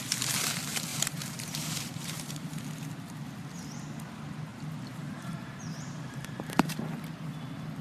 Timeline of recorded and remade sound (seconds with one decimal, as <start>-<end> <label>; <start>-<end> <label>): 0.0-0.9 recorded; 0.9-2.6 remade; 2.6-4.5 recorded; 4.5-6.8 remade; 6.8-7.8 recorded